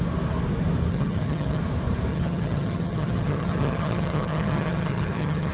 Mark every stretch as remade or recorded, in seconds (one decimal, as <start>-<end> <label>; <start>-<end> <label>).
0.0-0.9 recorded; 0.9-1.6 remade; 1.6-2.1 recorded; 2.1-5.5 remade